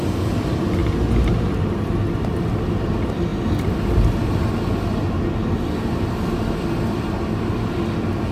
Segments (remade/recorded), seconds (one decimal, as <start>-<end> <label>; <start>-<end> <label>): 0.0-8.3 recorded